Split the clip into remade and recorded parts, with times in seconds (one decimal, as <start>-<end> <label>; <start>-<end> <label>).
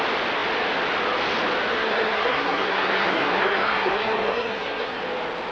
0.0-1.7 recorded; 1.7-5.0 remade; 5.0-5.5 recorded